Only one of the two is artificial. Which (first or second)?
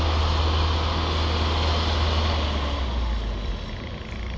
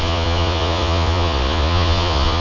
second